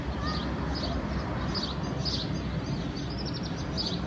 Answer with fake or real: real